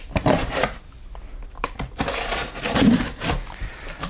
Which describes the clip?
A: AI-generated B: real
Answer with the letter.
A